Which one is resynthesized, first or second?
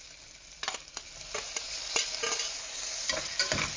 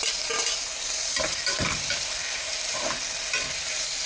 second